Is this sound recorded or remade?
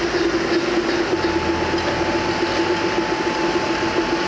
recorded